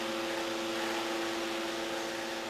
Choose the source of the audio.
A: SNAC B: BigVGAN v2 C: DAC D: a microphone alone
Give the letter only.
D